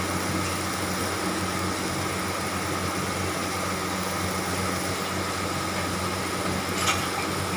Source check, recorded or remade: recorded